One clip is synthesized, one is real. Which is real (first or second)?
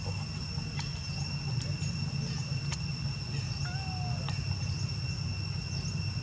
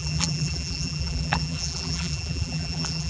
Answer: first